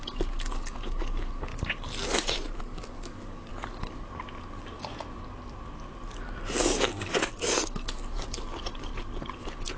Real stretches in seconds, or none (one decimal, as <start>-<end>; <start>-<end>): 1.5-2.6; 3.5-6.6; 8.9-9.8